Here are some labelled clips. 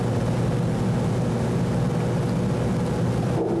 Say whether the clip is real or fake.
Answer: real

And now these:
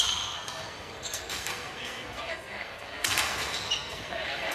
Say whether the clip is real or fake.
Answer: fake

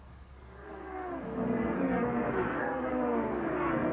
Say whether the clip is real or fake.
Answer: fake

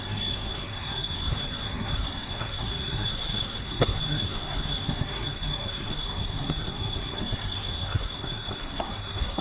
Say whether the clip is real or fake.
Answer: fake